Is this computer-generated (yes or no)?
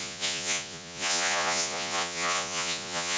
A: yes